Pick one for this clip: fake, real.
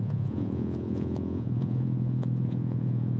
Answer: fake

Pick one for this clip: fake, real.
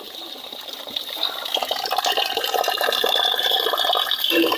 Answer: fake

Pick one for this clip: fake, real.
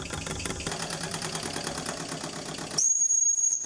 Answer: real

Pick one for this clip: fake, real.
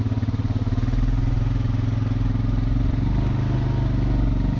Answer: real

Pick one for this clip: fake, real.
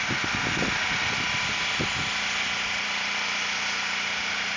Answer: real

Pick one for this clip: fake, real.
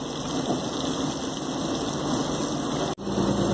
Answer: real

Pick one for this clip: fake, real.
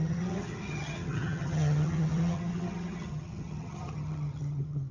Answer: fake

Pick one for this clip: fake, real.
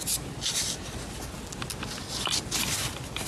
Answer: real